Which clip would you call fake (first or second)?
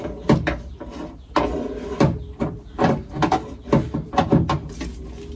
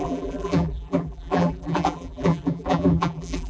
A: second